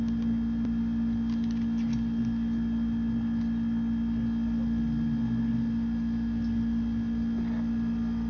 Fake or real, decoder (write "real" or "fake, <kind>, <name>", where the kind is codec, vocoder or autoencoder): real